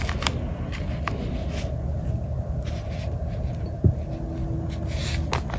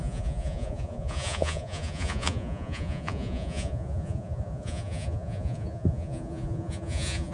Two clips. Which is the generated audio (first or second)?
second